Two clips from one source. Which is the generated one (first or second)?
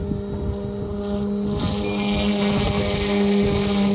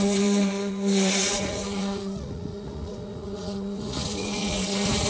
second